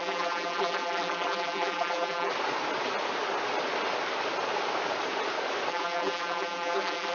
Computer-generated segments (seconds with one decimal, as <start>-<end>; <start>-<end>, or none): 0.0-2.3; 5.7-7.1